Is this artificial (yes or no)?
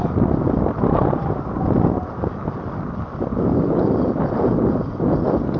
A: yes